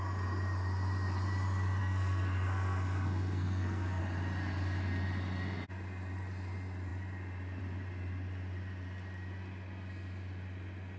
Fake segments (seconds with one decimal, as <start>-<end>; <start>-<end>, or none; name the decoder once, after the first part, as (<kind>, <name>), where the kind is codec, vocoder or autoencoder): 1.8-4.0 (codec, SNAC)